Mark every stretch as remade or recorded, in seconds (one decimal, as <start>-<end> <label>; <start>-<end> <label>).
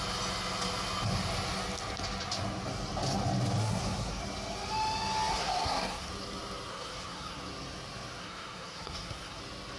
0.0-3.6 recorded; 3.6-4.2 remade; 4.2-5.3 recorded; 5.3-6.1 remade; 6.1-6.7 recorded; 6.7-7.4 remade; 7.4-8.2 recorded; 8.2-9.4 remade; 9.4-9.8 recorded